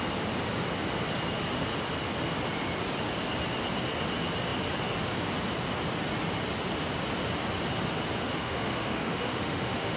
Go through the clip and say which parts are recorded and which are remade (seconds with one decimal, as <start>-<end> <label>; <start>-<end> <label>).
0.0-8.2 recorded; 8.2-10.0 remade